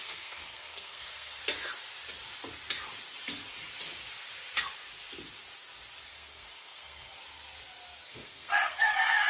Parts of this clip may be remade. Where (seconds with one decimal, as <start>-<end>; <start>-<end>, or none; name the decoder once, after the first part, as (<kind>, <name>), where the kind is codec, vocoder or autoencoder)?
0.0-1.4 (codec, SNAC); 6.1-7.2; 8.1-8.9